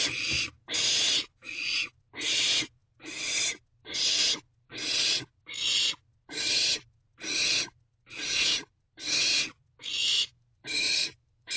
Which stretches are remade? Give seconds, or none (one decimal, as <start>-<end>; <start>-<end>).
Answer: 10.0-11.6